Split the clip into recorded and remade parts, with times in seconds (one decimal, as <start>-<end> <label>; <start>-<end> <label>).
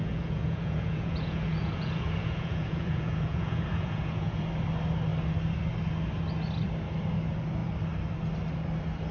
0.0-4.5 remade; 4.5-9.1 recorded